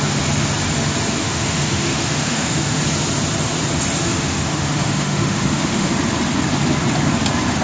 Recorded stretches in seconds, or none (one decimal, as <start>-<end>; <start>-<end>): 0.0-1.2; 2.8-4.0; 5.9-7.6